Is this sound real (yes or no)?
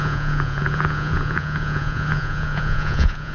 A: no